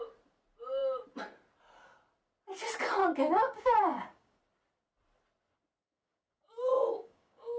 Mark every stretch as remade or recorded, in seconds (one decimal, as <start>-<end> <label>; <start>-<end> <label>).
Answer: 0.0-3.0 recorded; 3.0-4.4 remade; 4.4-5.8 recorded; 5.8-7.6 remade